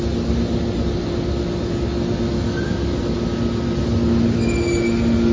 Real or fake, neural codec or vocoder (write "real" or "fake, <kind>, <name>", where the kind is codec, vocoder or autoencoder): real